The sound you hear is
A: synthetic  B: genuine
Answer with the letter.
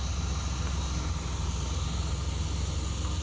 B